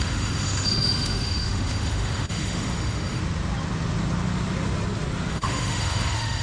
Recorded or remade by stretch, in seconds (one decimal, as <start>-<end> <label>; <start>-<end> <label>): 0.0-3.2 remade; 3.2-5.3 recorded; 5.3-6.4 remade